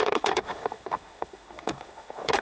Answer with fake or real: fake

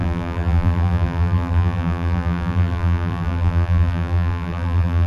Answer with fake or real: fake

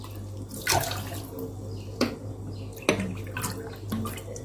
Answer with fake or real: real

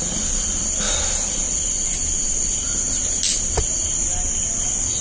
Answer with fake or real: real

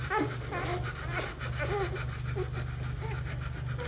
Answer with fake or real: real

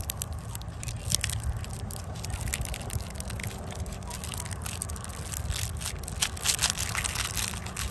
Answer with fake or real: real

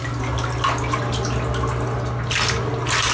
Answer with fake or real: real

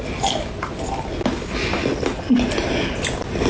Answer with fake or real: real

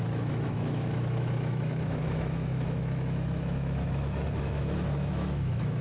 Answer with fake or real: fake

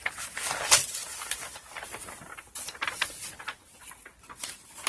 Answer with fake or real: real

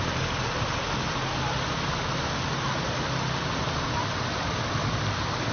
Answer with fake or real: real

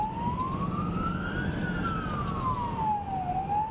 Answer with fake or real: real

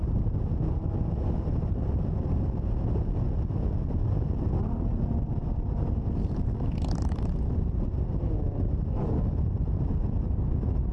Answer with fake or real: real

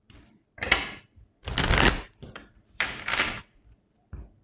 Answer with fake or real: real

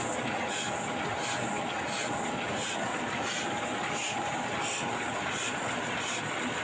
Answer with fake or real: real